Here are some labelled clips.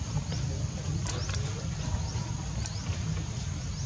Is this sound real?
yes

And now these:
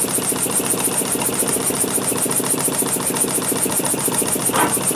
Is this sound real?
yes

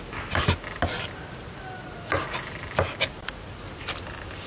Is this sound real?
yes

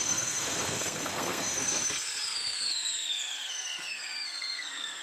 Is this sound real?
no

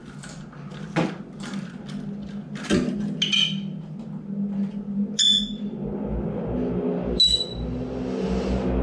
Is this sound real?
yes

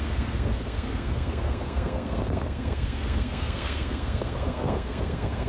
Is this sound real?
no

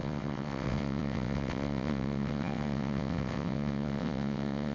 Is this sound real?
no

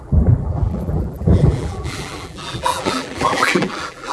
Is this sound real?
no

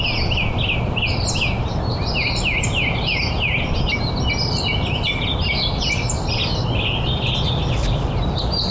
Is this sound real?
yes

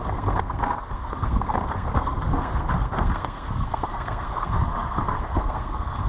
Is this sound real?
no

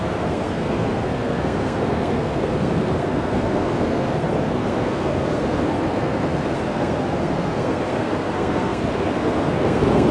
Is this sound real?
no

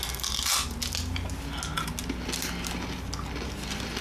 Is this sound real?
yes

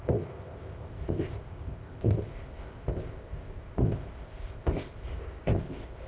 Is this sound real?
no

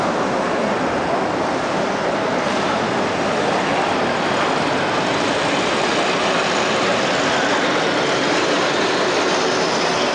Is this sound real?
yes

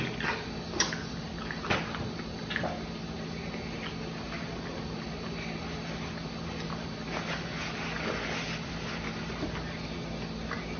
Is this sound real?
yes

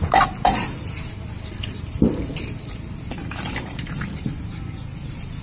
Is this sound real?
no